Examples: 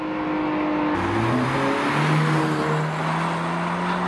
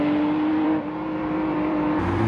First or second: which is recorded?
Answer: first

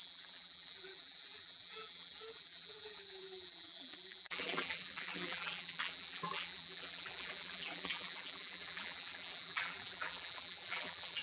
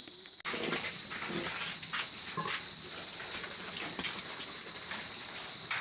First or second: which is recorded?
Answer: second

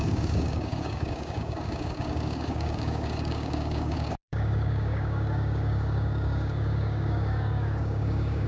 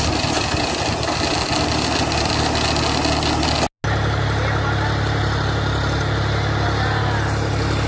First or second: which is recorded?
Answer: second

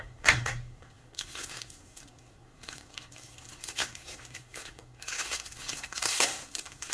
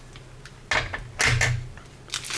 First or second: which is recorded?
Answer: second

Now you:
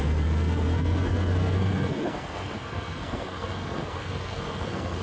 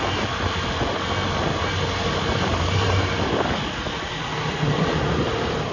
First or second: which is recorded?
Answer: second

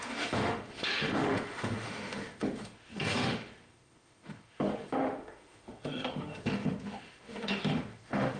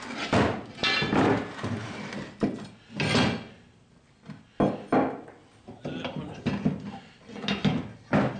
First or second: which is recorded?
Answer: second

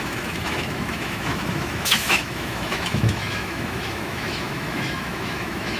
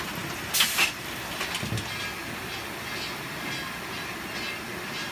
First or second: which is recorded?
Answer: second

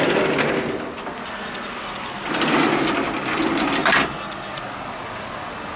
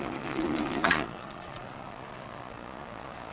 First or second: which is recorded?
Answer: first